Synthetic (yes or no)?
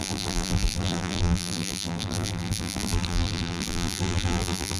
yes